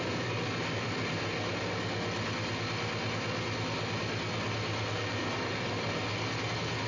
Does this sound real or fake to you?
real